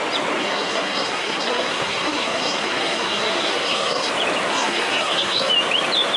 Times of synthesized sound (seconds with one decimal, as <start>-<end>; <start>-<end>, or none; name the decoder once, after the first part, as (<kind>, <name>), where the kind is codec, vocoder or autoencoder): 0.4-4.1 (codec, SNAC); 4.5-5.5